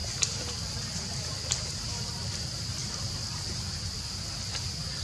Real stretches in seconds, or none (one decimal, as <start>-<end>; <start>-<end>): 0.0-5.0